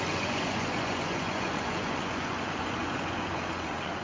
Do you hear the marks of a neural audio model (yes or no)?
yes